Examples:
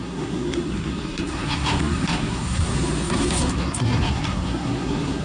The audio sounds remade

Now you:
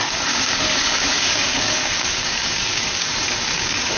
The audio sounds remade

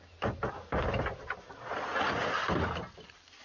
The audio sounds recorded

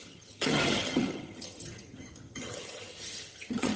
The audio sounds remade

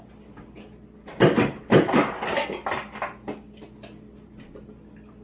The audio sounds recorded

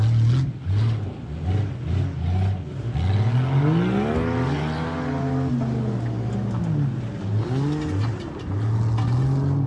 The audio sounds recorded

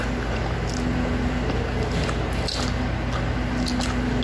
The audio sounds recorded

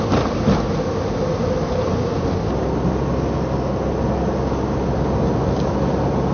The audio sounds recorded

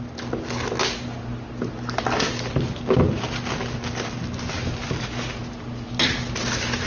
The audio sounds recorded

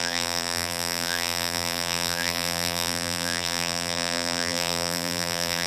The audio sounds remade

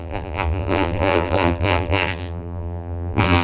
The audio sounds remade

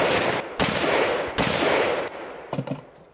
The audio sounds recorded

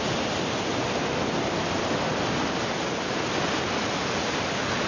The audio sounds recorded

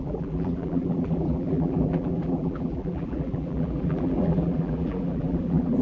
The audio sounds remade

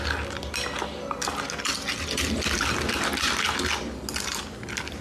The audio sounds recorded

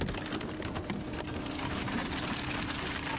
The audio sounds recorded